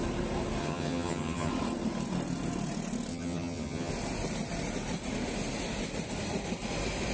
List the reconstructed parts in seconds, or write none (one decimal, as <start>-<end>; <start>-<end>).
0.6-1.5; 3.1-3.9